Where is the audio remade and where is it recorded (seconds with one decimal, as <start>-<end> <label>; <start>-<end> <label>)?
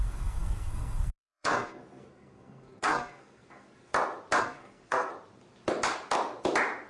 0.0-3.9 remade; 3.9-4.4 recorded; 4.4-5.1 remade; 5.1-6.9 recorded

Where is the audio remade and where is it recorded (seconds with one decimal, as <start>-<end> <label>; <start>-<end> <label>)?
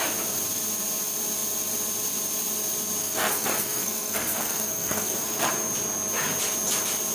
0.0-3.0 recorded; 3.0-5.5 remade; 5.5-7.1 recorded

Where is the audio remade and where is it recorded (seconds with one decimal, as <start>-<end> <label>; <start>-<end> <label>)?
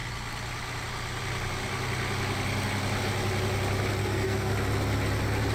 0.0-4.0 recorded; 4.0-4.5 remade; 4.5-5.5 recorded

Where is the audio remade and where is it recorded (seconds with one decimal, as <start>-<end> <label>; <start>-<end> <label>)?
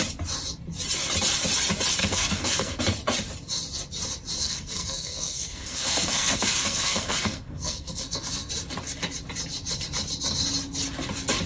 0.0-2.0 recorded; 2.0-2.8 remade; 2.8-4.4 recorded; 4.4-8.5 remade; 8.5-11.5 recorded